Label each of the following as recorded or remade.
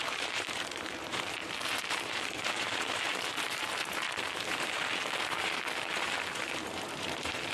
remade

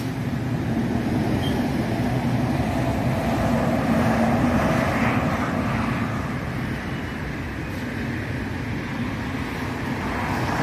recorded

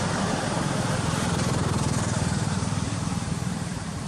remade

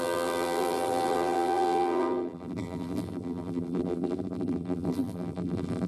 remade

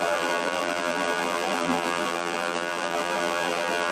remade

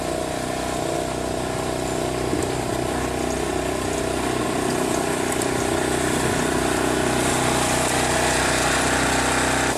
recorded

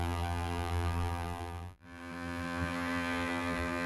remade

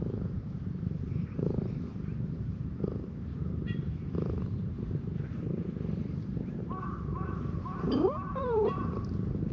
remade